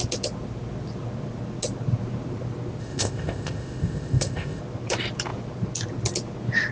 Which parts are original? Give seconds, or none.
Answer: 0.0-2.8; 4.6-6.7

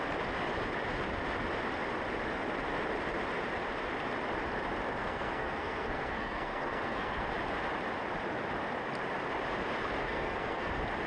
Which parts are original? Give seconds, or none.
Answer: 0.0-5.0; 7.3-10.0; 10.7-11.1

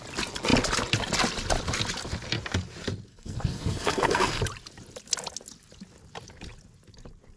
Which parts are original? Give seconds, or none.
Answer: 0.0-3.1; 4.4-7.4

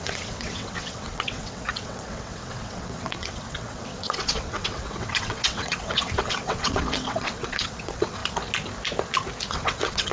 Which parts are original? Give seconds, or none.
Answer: 8.2-9.5